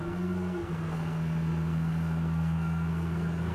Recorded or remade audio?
remade